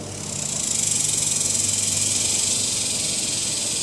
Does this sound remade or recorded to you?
recorded